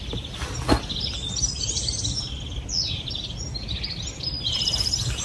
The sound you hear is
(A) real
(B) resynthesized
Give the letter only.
A